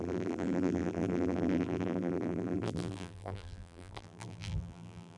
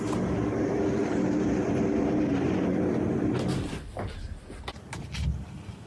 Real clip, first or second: second